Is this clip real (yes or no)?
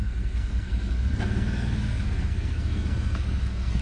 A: no